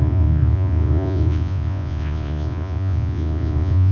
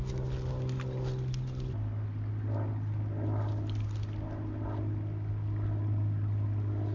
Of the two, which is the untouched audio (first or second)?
second